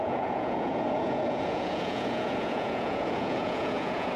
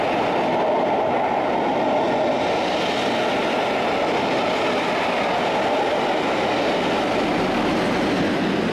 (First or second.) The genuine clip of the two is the second